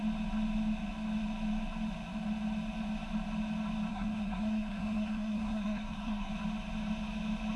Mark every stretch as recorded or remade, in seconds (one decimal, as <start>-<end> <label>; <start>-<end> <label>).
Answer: 0.0-3.9 recorded; 3.9-6.3 remade; 6.3-7.6 recorded